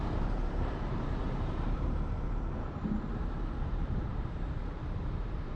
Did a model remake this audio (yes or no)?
yes